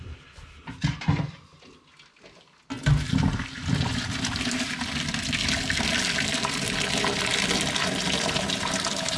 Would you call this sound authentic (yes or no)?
yes